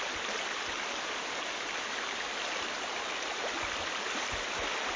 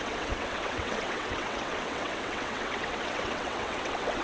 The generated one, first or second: second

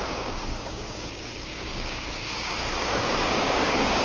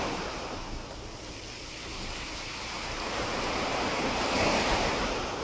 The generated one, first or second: first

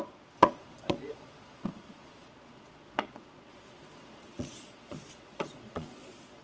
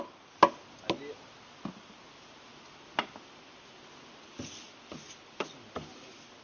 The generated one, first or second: first